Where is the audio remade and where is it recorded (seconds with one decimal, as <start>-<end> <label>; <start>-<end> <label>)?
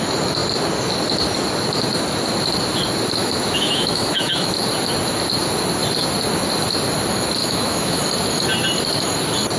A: 0.0-3.2 recorded; 3.2-4.5 remade; 4.5-7.4 recorded; 7.4-8.0 remade; 8.0-9.6 recorded